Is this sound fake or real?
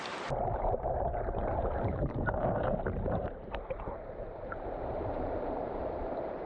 fake